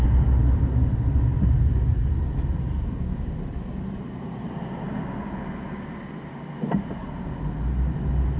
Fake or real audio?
real